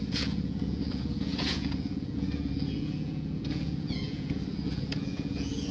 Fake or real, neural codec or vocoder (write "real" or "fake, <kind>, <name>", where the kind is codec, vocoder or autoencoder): fake, vocoder, Vocos